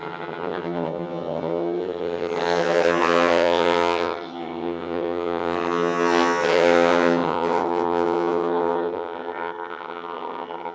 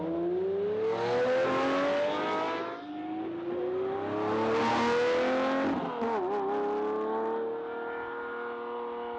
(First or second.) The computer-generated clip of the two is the first